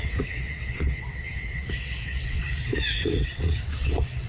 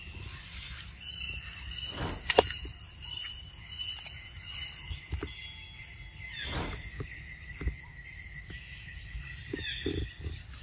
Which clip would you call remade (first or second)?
first